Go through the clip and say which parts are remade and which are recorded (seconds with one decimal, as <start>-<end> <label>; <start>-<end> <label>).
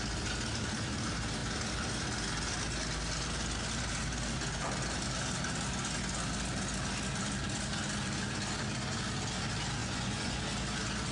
0.0-9.8 recorded; 9.8-10.4 remade; 10.4-11.1 recorded